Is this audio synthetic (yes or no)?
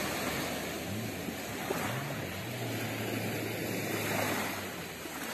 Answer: no